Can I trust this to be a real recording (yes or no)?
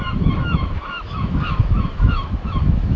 no